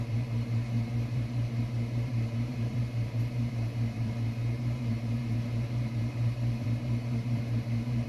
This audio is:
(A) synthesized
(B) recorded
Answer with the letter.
A